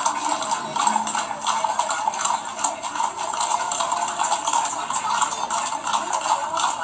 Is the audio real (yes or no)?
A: yes